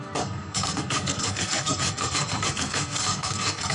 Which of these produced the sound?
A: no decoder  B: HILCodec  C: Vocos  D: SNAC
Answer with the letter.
D